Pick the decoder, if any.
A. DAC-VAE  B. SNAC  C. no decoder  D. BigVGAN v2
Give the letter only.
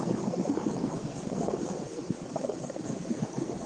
B